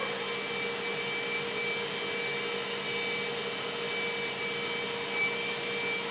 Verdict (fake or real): real